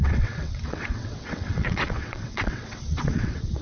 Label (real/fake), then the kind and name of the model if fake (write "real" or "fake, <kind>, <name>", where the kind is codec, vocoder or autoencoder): fake, vocoder, WaveNeXt